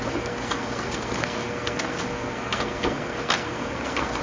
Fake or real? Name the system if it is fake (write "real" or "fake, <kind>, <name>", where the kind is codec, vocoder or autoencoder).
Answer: fake, codec, SNAC